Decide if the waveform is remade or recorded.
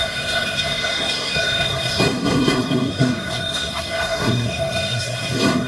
remade